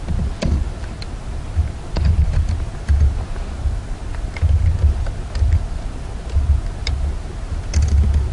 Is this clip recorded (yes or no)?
yes